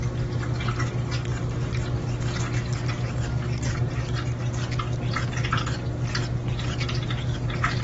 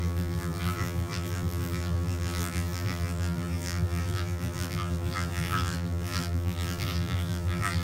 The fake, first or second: second